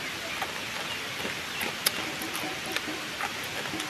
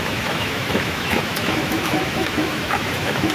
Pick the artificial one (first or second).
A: second